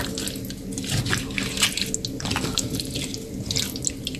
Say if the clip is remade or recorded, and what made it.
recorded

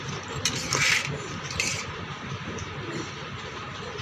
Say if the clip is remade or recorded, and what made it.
remade, vocoder, BigVGAN v2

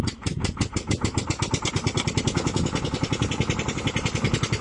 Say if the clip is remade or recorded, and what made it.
recorded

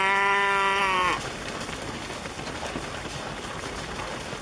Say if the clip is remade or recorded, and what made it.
recorded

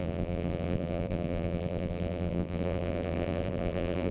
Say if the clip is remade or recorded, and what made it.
remade, vocoder, BigVGAN v2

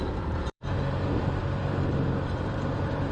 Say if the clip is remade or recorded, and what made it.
remade, vocoder, BigVGAN v2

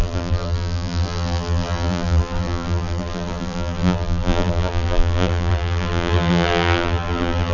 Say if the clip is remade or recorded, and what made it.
remade, vocoder, BigVGAN v2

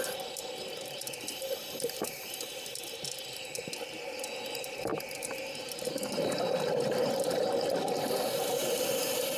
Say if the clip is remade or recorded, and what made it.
remade, vocoder, BigVGAN v2